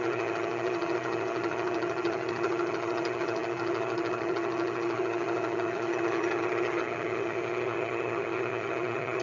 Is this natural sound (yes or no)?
no